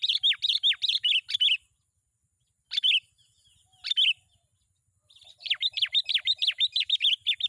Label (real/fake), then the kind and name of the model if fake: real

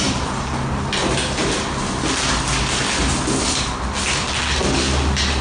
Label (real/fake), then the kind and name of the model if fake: real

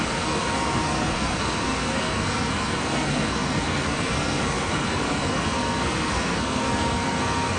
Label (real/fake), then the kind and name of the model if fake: fake, codec, SNAC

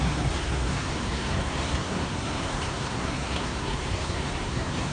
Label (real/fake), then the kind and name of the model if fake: fake, codec, SNAC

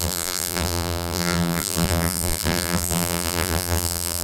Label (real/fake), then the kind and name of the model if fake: fake, vocoder, BigVGAN v2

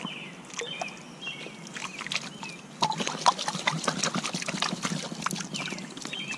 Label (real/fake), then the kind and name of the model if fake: real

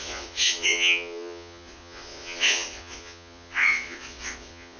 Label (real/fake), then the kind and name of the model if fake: fake, vocoder, Vocos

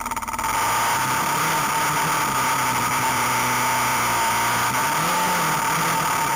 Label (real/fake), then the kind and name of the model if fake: fake, vocoder, BigVGAN v2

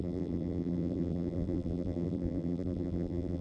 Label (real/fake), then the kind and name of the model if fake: fake, vocoder, BigVGAN v2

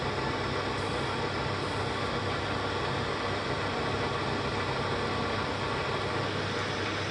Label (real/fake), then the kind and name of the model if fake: real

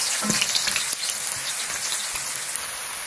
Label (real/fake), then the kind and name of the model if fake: real